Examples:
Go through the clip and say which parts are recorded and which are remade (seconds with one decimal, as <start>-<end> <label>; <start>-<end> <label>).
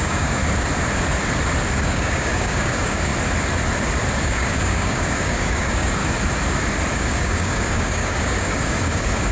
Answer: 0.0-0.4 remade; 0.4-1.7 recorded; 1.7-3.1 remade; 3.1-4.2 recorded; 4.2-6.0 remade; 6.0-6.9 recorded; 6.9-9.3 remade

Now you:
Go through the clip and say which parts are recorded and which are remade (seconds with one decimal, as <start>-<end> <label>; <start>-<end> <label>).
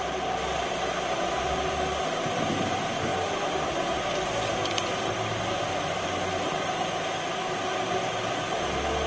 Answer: 0.0-9.1 recorded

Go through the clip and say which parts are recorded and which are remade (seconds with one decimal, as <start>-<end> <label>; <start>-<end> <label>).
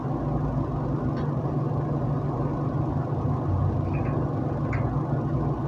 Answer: 0.0-5.7 recorded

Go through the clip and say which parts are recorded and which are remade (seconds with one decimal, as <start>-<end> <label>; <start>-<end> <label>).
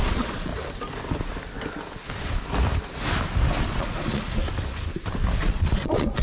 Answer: 0.0-0.5 remade; 0.5-3.6 recorded; 3.6-4.4 remade; 4.4-5.4 recorded; 5.4-6.2 remade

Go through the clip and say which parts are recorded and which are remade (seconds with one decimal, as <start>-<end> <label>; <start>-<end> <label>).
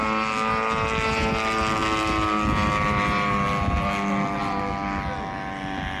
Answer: 0.0-6.0 recorded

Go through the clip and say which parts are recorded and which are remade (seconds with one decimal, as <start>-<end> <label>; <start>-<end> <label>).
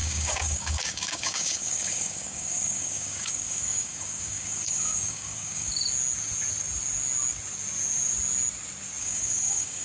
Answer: 0.0-5.7 remade; 5.7-9.0 recorded; 9.0-9.8 remade